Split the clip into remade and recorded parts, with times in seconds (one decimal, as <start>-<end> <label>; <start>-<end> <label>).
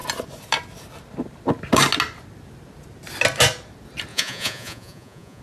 0.0-4.1 recorded; 4.1-5.4 remade